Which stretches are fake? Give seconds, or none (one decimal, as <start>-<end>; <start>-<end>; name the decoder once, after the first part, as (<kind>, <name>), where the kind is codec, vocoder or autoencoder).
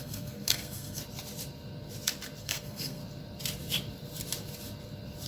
0.0-1.0 (codec, SNAC); 2.4-3.0